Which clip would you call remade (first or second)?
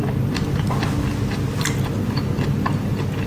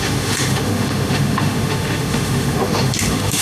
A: second